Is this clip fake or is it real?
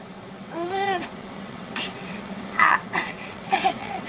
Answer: fake